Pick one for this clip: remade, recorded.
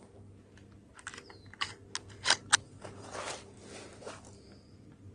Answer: recorded